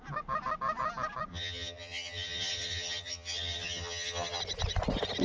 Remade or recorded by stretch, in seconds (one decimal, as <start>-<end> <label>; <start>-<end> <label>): 0.0-1.3 recorded; 1.3-4.4 remade; 4.4-5.2 recorded